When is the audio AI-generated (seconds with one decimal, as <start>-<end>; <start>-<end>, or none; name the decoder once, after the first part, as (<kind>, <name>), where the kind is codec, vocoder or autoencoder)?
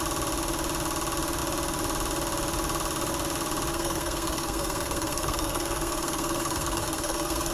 3.7-7.5 (codec, SNAC)